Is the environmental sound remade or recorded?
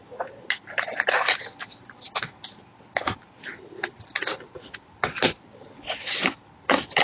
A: recorded